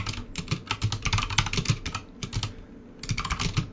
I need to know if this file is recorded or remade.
recorded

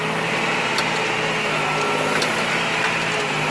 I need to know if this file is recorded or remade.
recorded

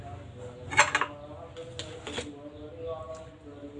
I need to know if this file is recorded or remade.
recorded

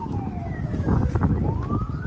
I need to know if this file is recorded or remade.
recorded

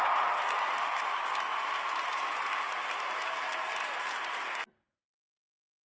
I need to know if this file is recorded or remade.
recorded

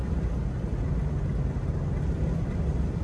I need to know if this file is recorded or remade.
recorded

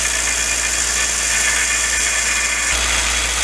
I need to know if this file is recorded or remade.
recorded